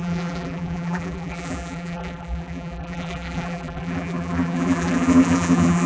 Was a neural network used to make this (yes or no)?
yes